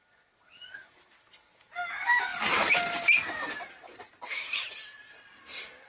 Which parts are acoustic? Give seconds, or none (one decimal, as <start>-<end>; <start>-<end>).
0.0-2.3